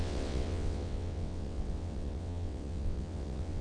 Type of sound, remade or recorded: remade